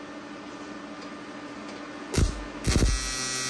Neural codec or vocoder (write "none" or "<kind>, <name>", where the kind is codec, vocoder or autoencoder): none